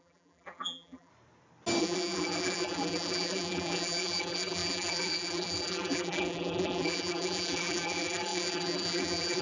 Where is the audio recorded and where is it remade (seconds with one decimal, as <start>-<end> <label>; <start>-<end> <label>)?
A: 0.0-1.1 remade; 1.1-1.8 recorded; 1.8-9.4 remade